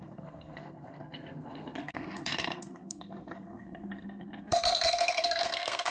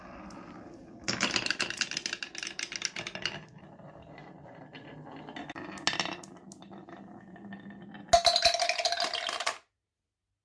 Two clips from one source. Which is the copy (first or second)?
first